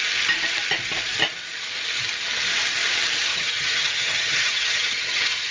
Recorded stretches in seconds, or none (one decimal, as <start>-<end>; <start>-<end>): 0.0-3.3